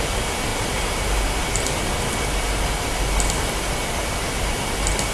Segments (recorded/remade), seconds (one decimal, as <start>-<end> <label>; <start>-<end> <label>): 0.0-5.1 recorded